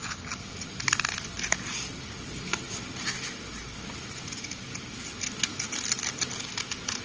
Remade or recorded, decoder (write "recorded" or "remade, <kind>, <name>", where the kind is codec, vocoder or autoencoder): recorded